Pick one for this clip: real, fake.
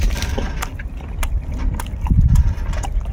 fake